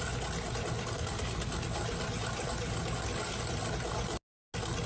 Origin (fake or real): real